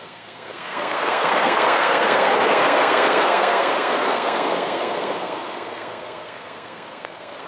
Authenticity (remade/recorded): remade